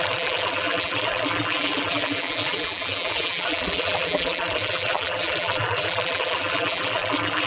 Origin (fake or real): fake